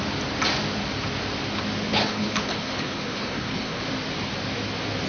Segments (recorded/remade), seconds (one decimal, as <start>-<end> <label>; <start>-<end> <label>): 0.0-1.9 recorded; 1.9-3.8 remade; 3.8-5.1 recorded